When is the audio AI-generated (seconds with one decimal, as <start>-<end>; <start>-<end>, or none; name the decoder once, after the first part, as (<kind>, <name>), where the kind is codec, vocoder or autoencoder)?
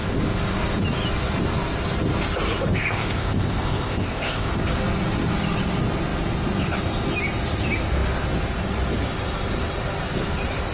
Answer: 2.7-4.5 (codec, ZipCodec)